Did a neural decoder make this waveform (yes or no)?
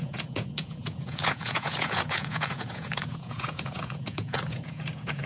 yes